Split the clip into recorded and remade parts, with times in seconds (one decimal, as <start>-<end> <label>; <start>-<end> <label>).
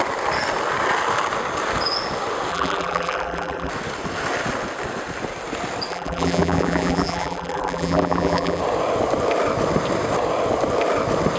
0.0-2.5 recorded; 2.5-3.7 remade; 3.7-5.9 recorded; 5.9-8.6 remade; 8.6-11.4 recorded